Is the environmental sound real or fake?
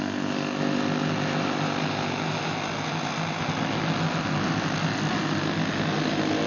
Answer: real